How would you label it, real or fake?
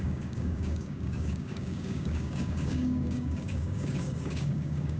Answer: fake